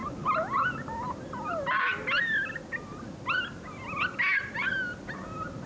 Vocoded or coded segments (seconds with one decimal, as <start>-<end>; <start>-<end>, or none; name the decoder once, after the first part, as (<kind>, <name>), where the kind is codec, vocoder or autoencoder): none